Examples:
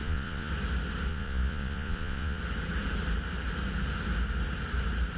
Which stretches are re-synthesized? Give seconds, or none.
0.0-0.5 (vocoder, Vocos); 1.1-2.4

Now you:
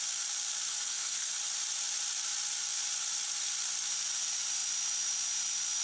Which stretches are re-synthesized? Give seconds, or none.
0.7-1.3 (codec, SNAC)

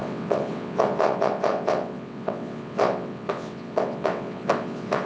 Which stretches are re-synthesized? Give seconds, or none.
0.0-5.1 (vocoder, WaveNeXt)

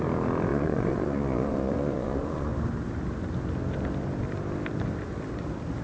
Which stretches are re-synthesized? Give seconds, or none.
0.5-2.5 (vocoder, Vocos)

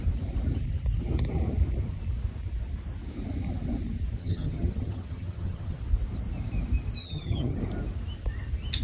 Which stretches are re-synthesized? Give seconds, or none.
4.2-5.8 (vocoder, HiFi-GAN); 7.0-7.6

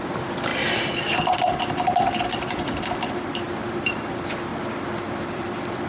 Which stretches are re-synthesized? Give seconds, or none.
0.0-4.5 (vocoder, BigVGAN v2); 5.2-5.9

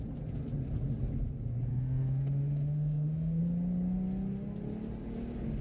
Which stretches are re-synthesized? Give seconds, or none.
1.7-3.4 (autoencoder, DAC-VAE)

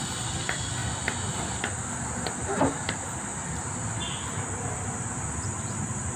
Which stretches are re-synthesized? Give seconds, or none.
none